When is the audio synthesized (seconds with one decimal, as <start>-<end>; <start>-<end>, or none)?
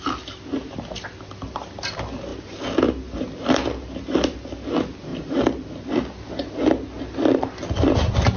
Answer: none